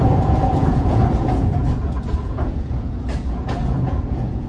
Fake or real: fake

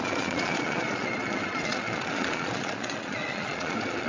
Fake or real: fake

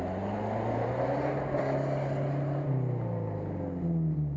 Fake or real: real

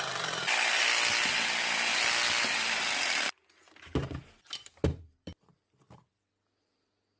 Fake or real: real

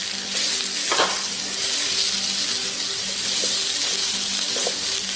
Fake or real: real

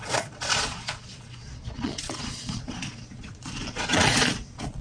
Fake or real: fake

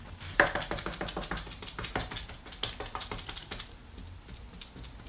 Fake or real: real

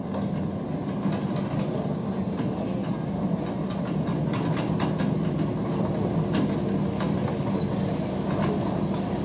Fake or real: real